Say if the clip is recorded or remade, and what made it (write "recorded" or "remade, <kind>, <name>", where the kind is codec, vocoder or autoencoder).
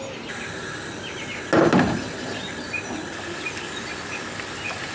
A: recorded